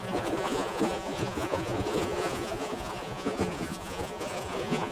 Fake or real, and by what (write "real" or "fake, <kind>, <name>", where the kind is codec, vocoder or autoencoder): fake, vocoder, Vocos